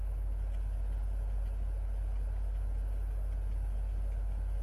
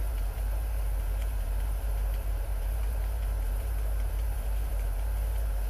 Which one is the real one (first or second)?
first